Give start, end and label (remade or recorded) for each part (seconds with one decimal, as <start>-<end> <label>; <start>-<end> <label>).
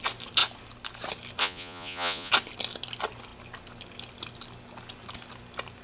0.0-1.4 recorded; 1.4-2.3 remade; 2.3-5.8 recorded